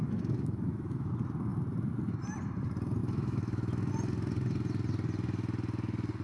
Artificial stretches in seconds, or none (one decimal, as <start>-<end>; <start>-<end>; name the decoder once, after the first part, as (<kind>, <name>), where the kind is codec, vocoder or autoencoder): 0.0-1.1 (autoencoder, DAC-VAE); 3.0-3.9